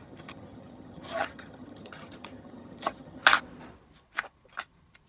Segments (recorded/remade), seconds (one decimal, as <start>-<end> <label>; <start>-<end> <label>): 0.0-3.2 remade; 3.2-5.1 recorded